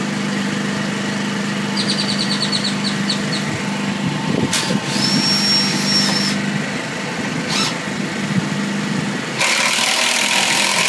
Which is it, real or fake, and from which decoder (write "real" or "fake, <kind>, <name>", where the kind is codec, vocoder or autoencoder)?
real